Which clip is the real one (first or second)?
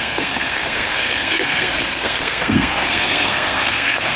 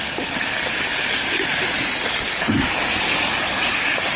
second